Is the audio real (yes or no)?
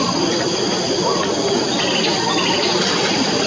yes